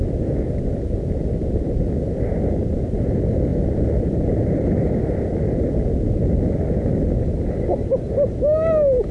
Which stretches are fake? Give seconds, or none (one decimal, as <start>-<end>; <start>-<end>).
none